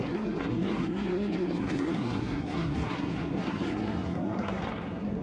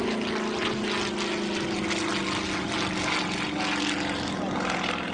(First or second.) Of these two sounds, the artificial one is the first